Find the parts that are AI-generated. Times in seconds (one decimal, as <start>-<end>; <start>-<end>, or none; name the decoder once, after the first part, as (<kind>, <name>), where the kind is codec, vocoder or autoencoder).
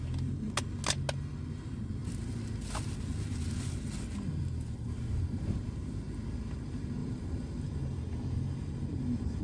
7.0-9.4 (vocoder, BigVGAN v2)